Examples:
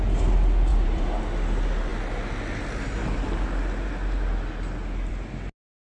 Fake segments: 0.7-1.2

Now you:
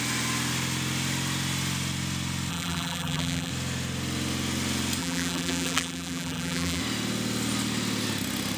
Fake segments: 2.5-3.5; 5.0-6.8